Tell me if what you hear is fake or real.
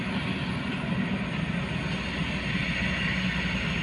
real